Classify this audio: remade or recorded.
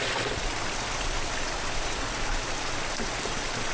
recorded